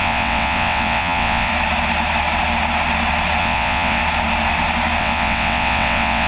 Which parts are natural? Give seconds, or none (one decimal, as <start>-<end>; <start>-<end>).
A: 1.5-3.4; 4.0-5.0